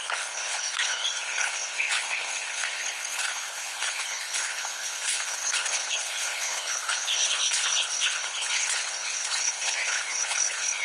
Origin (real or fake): fake